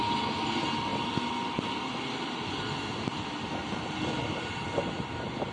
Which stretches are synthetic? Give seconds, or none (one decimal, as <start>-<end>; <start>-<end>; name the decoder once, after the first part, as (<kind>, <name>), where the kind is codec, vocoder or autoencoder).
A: none